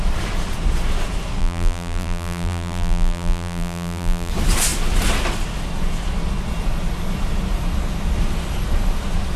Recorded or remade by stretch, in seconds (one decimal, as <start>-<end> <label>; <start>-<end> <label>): 0.0-1.4 recorded; 1.4-4.3 remade; 4.3-9.4 recorded